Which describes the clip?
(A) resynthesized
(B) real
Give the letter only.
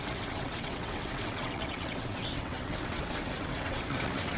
A